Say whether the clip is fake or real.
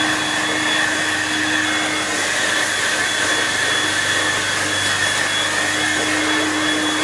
real